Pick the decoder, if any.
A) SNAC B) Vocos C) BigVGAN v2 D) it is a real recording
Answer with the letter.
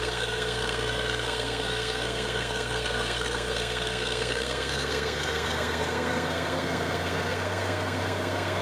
A